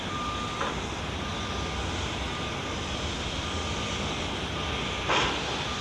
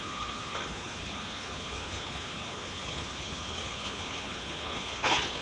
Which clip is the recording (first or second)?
first